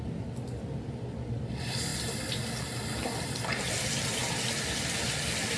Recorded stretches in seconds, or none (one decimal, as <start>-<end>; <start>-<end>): 0.0-5.6